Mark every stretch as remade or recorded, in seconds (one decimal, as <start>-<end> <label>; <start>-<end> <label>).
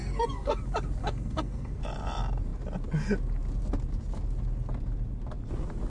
0.0-0.6 remade; 0.6-1.0 recorded; 1.0-1.8 remade; 1.8-5.9 recorded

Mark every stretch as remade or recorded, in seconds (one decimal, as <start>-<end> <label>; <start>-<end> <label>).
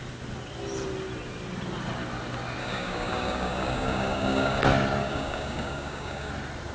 0.0-2.6 recorded; 2.6-4.6 remade; 4.6-5.0 recorded; 5.0-6.3 remade; 6.3-6.7 recorded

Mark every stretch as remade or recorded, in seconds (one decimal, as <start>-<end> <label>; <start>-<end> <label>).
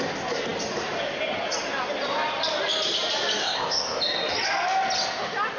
0.0-3.4 recorded; 3.4-4.0 remade; 4.0-5.6 recorded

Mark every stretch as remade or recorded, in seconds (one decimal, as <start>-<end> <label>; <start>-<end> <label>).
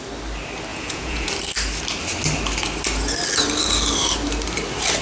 0.0-0.7 recorded; 0.7-1.3 remade; 1.3-5.0 recorded